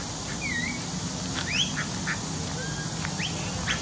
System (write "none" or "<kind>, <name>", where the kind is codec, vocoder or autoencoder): none